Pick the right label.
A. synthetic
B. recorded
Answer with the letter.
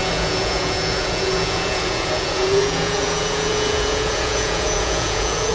A